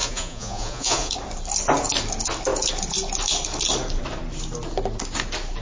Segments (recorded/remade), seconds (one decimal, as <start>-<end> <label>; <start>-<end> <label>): 0.0-1.1 remade; 1.1-5.6 recorded